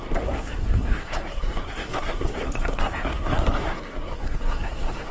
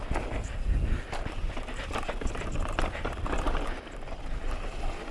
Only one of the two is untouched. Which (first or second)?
second